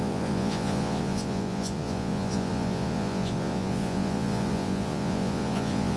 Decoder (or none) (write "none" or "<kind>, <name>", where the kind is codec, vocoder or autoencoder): vocoder, Vocos